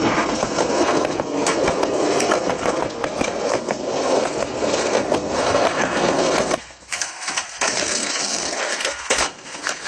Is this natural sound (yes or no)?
no